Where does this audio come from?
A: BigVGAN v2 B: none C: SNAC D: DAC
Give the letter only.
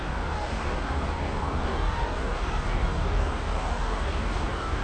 D